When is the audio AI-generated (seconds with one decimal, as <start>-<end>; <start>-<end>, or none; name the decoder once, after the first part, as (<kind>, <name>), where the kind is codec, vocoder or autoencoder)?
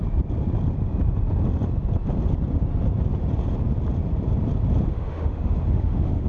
4.9-6.3 (autoencoder, DAC-VAE)